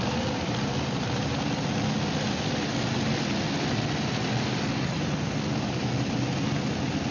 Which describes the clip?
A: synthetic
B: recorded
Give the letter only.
B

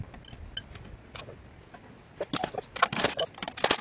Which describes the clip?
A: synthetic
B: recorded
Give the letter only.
B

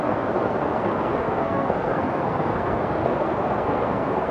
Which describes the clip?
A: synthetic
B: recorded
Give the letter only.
A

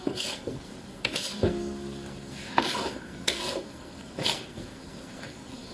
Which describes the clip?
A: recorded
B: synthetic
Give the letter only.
B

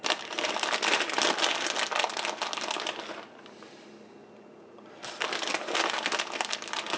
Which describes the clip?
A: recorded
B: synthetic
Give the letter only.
A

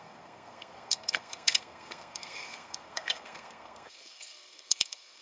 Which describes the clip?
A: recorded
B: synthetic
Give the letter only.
B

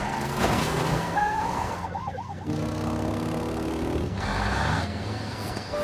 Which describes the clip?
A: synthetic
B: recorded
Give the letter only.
A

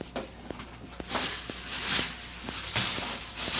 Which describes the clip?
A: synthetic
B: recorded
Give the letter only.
B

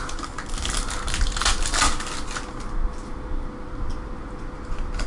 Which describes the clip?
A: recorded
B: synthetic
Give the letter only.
A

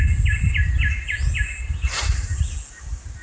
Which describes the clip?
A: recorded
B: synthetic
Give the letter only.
A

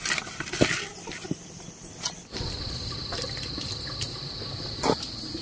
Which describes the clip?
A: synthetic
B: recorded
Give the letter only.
B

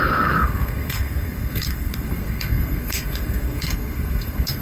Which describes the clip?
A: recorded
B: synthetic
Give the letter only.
B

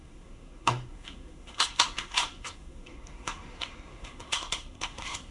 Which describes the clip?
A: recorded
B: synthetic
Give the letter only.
B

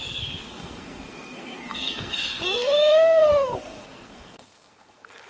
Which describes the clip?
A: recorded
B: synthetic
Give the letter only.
B